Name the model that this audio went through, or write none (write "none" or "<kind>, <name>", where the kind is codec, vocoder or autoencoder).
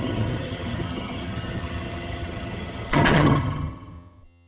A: vocoder, HiFi-GAN